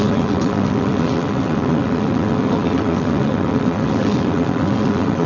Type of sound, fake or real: fake